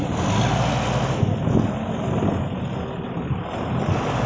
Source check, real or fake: real